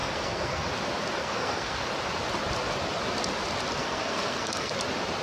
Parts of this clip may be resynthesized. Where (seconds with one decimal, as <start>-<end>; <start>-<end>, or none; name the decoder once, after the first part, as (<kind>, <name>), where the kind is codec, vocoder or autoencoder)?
0.0-0.7 (codec, SNAC); 1.2-1.9; 3.8-4.7